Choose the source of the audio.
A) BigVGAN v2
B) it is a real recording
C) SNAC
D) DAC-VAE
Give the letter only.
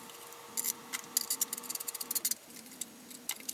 B